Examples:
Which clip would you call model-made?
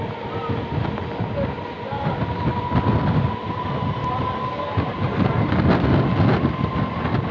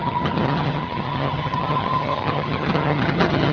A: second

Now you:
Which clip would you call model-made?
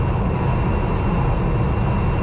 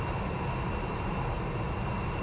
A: second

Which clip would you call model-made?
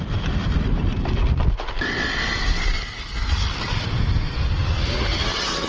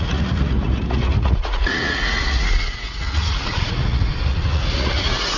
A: second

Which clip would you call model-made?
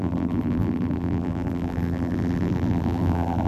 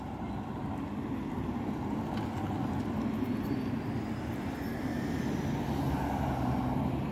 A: first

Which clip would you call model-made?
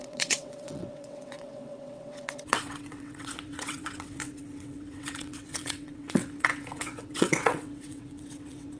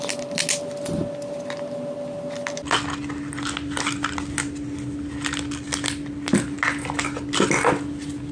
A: first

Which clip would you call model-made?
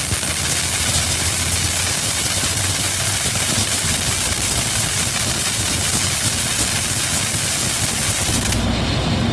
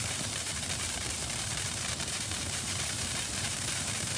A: second